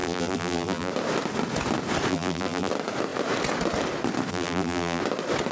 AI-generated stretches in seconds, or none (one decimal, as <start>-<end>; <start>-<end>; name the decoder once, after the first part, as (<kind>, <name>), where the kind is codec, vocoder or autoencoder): 0.0-0.9 (vocoder, BigVGAN v2); 2.1-2.7; 4.3-5.0